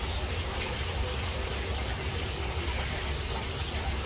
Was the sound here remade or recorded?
recorded